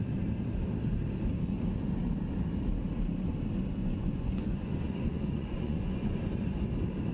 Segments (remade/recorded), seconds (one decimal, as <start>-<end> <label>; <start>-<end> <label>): 0.0-3.8 recorded; 3.8-6.2 remade; 6.2-7.1 recorded